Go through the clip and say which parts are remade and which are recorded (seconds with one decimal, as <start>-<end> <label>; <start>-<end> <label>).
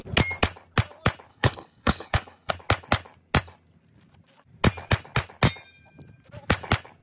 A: 0.0-1.3 recorded; 1.3-2.5 remade; 2.5-7.0 recorded